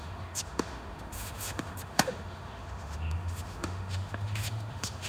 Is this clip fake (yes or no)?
yes